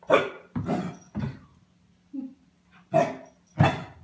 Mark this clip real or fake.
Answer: real